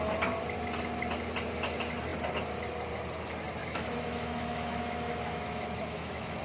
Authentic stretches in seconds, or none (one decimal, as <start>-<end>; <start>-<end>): 0.0-3.6

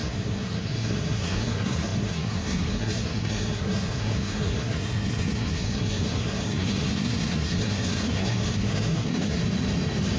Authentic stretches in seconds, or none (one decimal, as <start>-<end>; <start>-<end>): 9.4-10.2

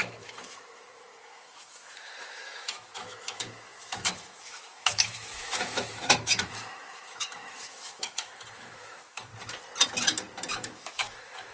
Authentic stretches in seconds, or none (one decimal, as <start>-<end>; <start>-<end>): 9.3-10.5